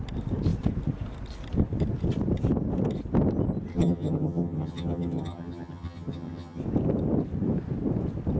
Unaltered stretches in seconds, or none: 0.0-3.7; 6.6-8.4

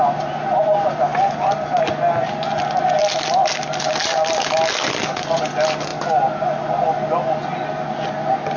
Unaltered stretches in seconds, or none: 0.0-8.6

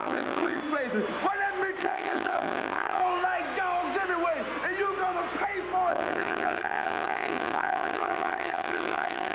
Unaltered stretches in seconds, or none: 0.6-1.8; 3.0-5.9

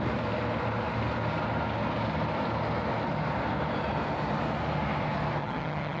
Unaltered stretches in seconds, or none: 0.0-5.4

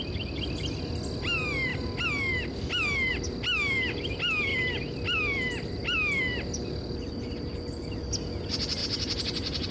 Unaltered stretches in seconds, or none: 0.0-9.7

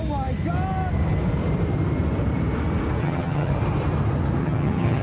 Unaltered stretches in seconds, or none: 0.0-3.0; 3.5-4.4